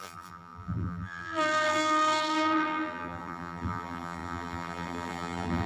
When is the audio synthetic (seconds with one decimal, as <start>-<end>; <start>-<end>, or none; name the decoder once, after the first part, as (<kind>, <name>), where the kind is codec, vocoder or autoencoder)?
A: 0.0-5.7 (vocoder, BigVGAN v2)